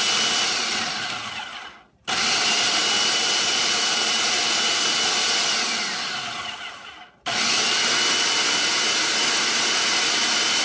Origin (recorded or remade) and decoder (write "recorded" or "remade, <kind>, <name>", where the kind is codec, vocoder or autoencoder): recorded